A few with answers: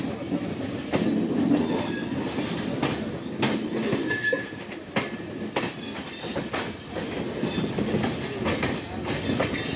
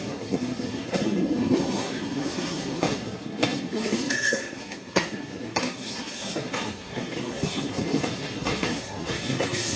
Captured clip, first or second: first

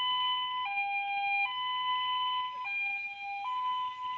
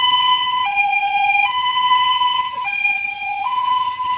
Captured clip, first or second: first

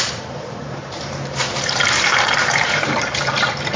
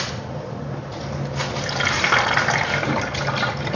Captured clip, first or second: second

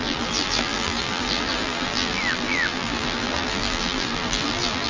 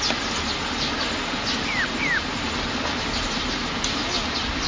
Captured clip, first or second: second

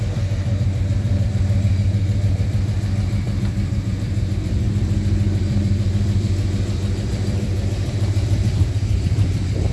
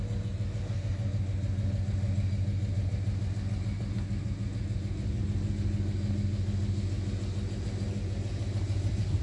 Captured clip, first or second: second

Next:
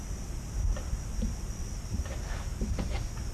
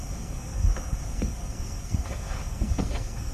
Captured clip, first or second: first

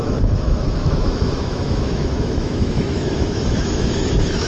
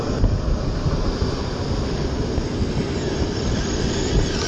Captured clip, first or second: second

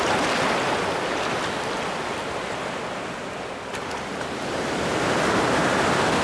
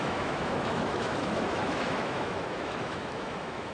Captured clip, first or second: first